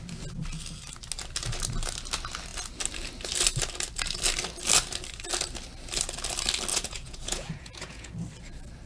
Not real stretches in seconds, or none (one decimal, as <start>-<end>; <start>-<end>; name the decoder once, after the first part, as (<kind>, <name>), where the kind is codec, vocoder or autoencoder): 6.7-8.1 (vocoder, Vocos)